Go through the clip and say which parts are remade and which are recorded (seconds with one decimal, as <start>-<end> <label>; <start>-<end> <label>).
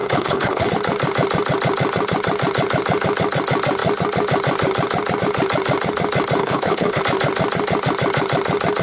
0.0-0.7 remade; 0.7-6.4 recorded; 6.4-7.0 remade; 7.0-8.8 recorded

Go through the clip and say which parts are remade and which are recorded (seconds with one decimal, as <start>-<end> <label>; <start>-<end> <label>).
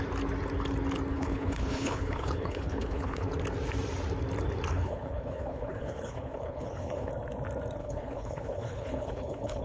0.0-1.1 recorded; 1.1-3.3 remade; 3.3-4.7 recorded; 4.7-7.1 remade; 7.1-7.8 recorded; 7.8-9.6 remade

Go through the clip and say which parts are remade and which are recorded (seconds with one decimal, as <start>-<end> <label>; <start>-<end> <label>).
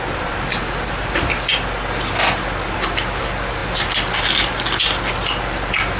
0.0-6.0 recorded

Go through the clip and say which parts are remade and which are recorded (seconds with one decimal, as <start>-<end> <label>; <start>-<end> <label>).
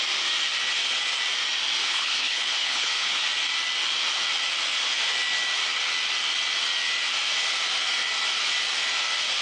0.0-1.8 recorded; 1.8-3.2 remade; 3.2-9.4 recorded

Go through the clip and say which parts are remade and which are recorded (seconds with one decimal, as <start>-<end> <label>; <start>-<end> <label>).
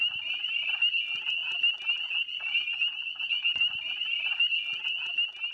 0.0-5.5 recorded